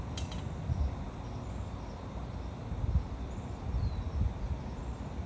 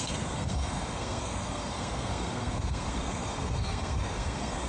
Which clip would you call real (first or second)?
first